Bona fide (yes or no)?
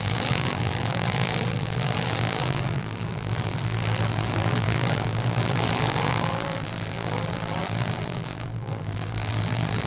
no